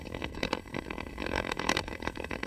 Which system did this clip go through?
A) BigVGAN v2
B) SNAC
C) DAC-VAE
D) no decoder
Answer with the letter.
B